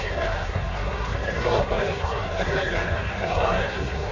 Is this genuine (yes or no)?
no